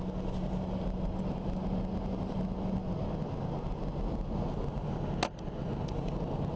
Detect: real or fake real